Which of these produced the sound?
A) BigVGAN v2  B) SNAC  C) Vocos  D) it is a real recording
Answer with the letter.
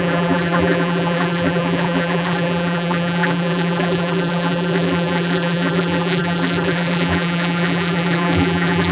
A